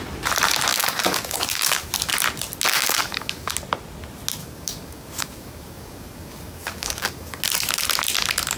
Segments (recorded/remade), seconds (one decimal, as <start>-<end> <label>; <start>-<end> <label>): 0.0-0.7 recorded; 0.7-1.9 remade; 1.9-2.7 recorded; 2.7-3.5 remade; 3.5-4.4 recorded; 4.4-7.4 remade; 7.4-8.6 recorded